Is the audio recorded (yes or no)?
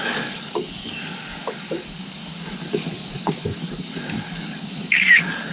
no